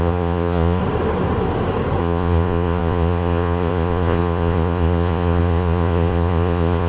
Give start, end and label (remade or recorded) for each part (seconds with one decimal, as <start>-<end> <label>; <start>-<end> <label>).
0.0-0.8 remade; 0.8-2.0 recorded; 2.0-6.9 remade

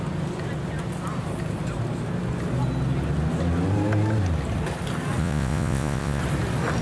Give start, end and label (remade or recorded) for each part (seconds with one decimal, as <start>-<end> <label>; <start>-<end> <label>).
0.0-5.2 recorded; 5.2-6.2 remade; 6.2-6.8 recorded

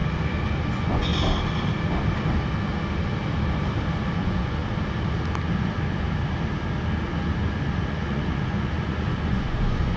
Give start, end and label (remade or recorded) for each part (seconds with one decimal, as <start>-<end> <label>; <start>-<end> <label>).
0.0-0.7 recorded; 0.7-1.1 remade; 1.1-4.1 recorded; 4.1-4.6 remade; 4.6-7.9 recorded; 7.9-10.0 remade

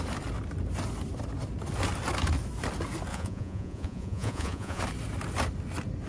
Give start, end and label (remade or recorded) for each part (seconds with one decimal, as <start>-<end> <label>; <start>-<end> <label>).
0.0-3.1 recorded; 3.1-4.8 remade; 4.8-6.1 recorded

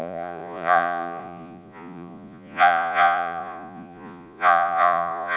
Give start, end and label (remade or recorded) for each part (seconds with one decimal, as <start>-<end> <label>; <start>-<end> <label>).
0.0-5.4 remade

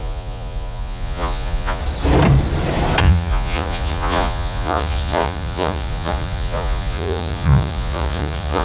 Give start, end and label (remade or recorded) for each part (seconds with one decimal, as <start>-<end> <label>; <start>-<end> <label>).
0.0-1.8 remade; 1.8-3.0 recorded; 3.0-8.6 remade